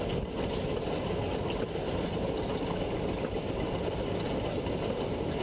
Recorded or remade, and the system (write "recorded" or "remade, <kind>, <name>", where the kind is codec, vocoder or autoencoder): recorded